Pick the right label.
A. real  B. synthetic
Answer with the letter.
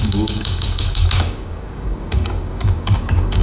B